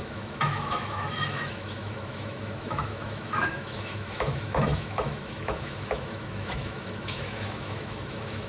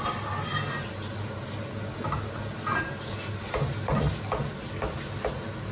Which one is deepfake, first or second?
first